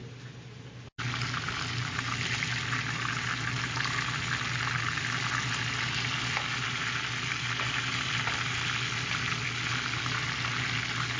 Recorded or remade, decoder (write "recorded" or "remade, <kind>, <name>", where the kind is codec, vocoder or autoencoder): recorded